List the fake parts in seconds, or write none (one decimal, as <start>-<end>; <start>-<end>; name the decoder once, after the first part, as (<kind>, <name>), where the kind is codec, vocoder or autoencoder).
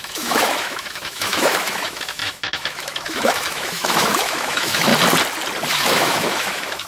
0.0-4.9 (autoencoder, DAC-VAE); 5.7-6.9